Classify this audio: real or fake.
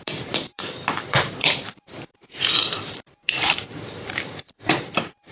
fake